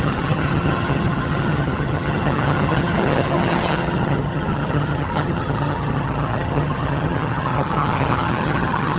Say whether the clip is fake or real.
fake